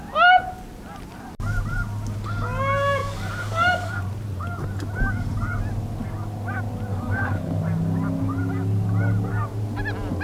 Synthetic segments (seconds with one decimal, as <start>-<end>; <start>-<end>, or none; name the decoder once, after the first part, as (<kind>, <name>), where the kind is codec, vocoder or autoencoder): 3.0-4.0 (codec, DAC); 6.9-7.6